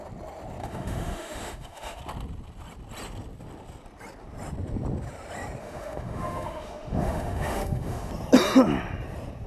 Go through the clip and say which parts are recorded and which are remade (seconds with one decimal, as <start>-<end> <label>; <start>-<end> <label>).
0.0-0.6 recorded; 0.6-2.0 remade; 2.0-5.6 recorded; 5.6-8.1 remade; 8.1-9.5 recorded